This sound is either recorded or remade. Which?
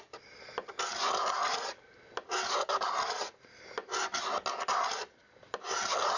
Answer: recorded